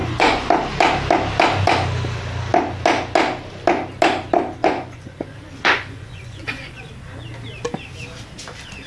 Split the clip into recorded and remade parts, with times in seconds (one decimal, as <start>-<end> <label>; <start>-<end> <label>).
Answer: 0.0-0.5 remade; 0.5-4.6 recorded; 4.6-6.9 remade; 6.9-8.9 recorded